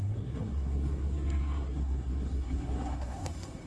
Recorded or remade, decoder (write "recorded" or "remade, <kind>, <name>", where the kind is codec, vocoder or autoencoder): remade, codec, SNAC